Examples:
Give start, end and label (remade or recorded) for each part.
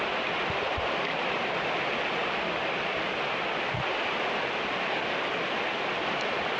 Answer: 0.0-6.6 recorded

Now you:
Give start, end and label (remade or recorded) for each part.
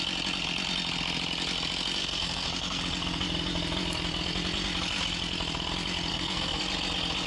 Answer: 0.0-2.0 recorded; 2.0-2.8 remade; 2.8-6.1 recorded; 6.1-6.6 remade; 6.6-7.3 recorded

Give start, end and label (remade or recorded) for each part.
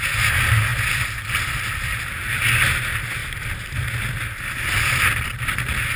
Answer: 0.0-6.0 recorded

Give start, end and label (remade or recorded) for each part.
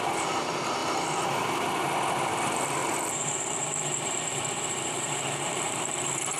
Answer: 0.0-0.8 remade; 0.8-2.1 recorded; 2.1-6.4 remade